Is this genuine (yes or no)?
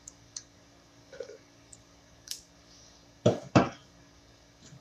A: no